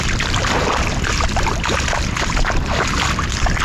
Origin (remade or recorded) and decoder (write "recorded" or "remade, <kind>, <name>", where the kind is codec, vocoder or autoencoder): recorded